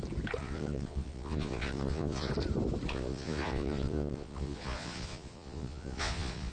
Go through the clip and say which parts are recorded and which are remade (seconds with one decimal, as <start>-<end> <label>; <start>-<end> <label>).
0.0-0.4 recorded; 0.4-2.3 remade; 2.3-2.9 recorded; 2.9-6.5 remade